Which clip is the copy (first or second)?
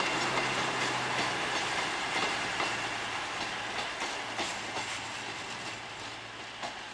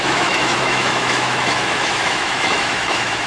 second